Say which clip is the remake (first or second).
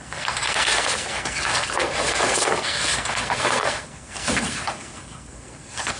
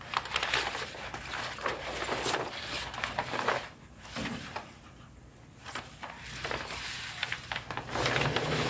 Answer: first